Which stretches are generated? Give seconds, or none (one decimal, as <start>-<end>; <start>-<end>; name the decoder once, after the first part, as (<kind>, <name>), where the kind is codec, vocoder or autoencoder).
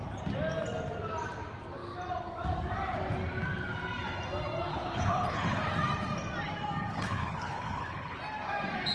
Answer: 4.7-5.6 (codec, HILCodec); 6.9-8.2